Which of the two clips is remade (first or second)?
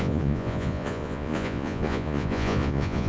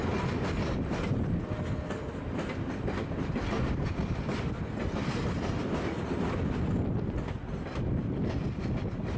first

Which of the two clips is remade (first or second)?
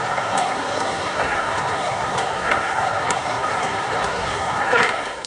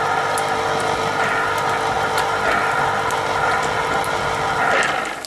first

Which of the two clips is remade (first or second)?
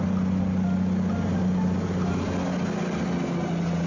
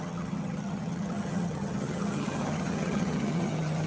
second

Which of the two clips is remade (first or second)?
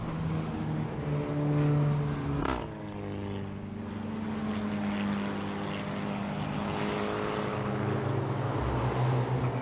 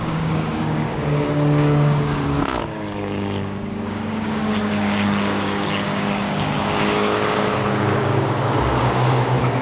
second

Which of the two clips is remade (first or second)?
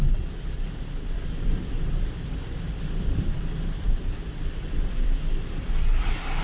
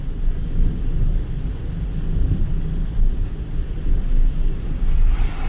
first